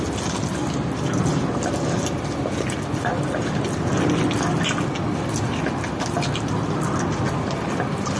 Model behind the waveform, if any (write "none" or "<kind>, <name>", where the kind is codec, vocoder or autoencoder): none